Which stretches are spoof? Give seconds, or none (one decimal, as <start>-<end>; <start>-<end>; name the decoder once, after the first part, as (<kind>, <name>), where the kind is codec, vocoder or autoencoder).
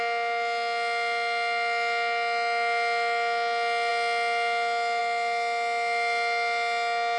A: none